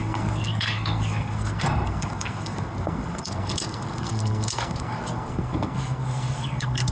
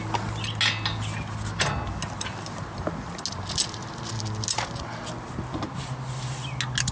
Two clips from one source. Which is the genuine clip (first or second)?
second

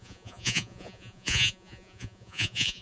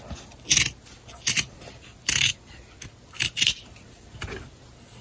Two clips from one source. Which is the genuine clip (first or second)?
second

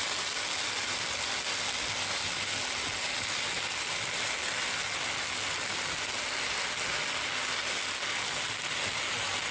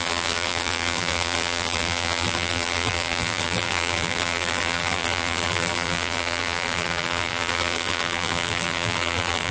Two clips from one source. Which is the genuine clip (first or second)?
first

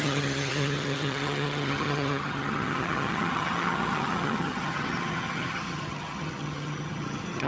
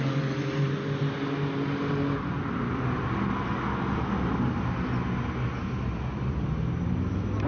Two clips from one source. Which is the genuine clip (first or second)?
second